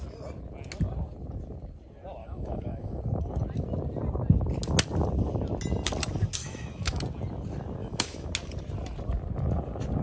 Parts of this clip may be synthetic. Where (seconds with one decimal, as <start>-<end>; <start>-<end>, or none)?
2.2-3.0; 6.4-7.0; 7.8-8.3